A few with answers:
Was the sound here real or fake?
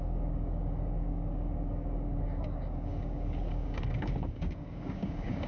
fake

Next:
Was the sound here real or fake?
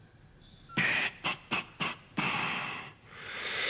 real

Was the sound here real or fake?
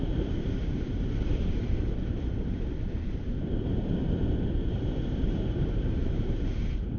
fake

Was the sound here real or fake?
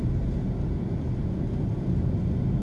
real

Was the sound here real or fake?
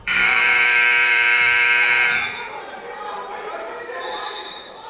fake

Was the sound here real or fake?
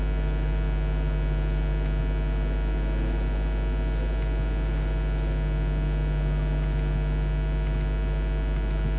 real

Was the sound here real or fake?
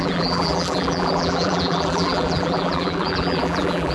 fake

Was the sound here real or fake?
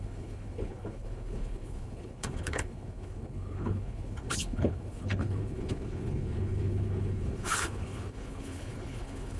fake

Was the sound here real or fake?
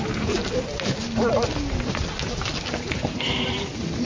real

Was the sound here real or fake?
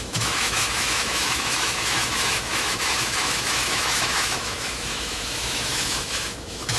fake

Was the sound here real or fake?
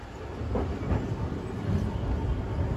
real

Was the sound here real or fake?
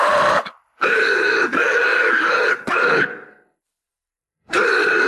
real